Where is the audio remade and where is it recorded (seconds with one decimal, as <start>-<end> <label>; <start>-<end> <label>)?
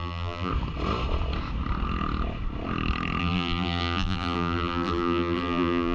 0.0-0.5 remade; 0.5-3.2 recorded; 3.2-5.9 remade